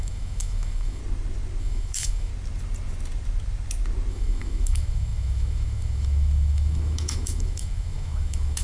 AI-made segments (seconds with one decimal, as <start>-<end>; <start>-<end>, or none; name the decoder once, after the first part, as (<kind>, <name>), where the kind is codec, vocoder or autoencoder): 0.0-1.0 (autoencoder, DAC-VAE); 1.6-2.3; 4.1-8.6